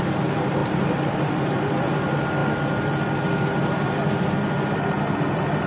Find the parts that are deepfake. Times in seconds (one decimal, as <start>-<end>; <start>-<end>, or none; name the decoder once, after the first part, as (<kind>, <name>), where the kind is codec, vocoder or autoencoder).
none